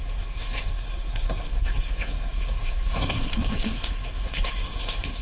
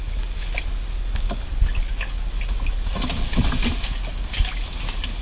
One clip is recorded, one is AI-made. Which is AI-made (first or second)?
first